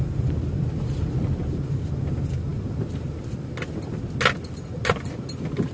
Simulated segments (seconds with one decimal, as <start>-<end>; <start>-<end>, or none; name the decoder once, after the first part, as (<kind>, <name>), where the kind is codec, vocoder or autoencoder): none